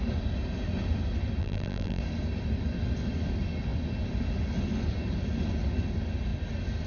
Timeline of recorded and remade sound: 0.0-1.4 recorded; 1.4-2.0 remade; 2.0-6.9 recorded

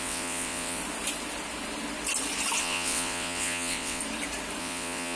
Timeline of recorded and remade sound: 0.0-0.8 remade; 0.8-2.6 recorded; 2.6-4.0 remade; 4.0-4.6 recorded; 4.6-5.2 remade

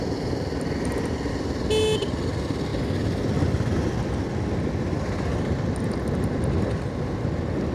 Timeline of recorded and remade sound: 0.0-7.7 recorded

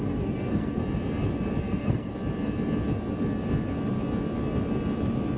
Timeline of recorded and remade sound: 0.0-0.8 remade; 0.8-1.6 recorded; 1.6-2.1 remade; 2.1-5.4 recorded

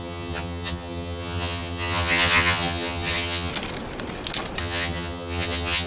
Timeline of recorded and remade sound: 0.0-3.5 remade; 3.5-4.6 recorded; 4.6-5.9 remade